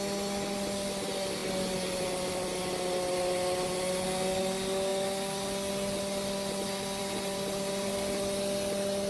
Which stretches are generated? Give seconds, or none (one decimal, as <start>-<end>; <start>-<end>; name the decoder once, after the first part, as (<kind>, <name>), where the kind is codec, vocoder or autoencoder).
7.0-7.9 (vocoder, BigVGAN v2)